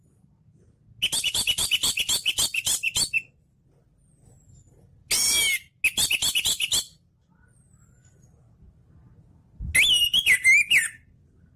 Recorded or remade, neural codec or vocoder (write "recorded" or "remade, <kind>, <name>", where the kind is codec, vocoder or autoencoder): recorded